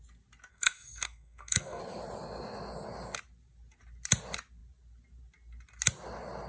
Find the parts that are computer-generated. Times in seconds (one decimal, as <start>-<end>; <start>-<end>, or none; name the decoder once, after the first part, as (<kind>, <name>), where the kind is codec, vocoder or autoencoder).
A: 0.5-1.8 (codec, SNAC)